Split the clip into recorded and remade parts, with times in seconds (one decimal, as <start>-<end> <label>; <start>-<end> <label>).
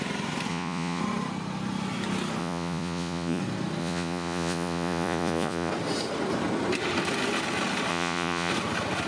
0.0-0.5 recorded; 0.5-1.0 remade; 1.0-2.4 recorded; 2.4-3.4 remade; 3.4-3.8 recorded; 3.8-5.7 remade; 5.7-7.9 recorded; 7.9-8.5 remade; 8.5-9.1 recorded